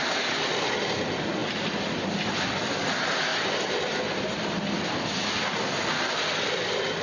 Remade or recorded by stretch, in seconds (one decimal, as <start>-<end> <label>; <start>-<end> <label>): 0.0-7.0 recorded